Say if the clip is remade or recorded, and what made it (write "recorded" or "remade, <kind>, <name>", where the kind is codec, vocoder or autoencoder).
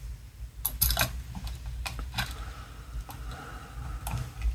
recorded